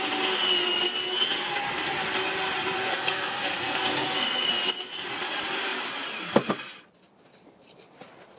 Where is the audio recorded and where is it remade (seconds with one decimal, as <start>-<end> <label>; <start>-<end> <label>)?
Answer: 0.0-2.9 recorded; 2.9-4.5 remade; 4.5-8.4 recorded